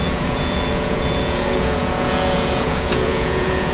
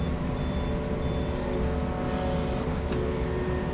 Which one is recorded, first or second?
second